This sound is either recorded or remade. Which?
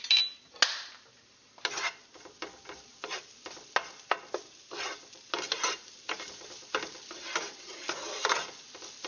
recorded